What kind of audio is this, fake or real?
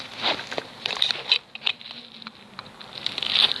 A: real